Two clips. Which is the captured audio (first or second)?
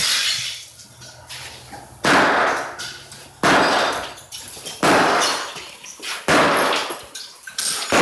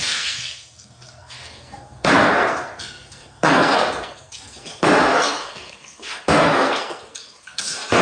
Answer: first